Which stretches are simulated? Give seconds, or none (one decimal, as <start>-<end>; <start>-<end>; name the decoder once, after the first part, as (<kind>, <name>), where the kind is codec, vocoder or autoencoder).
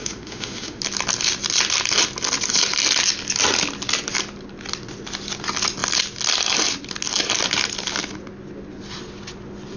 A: 0.0-0.8 (autoencoder, DAC-VAE)